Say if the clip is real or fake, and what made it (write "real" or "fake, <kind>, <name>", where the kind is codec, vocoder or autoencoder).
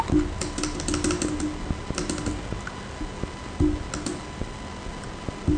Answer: real